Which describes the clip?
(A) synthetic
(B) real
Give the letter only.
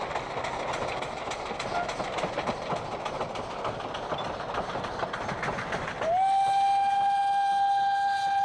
B